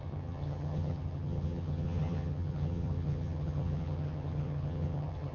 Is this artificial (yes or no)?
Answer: yes